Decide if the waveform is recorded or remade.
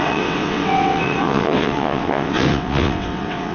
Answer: remade